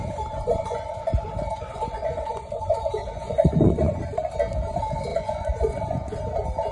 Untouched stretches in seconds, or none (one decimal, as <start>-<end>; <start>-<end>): 4.0-5.1; 6.2-6.7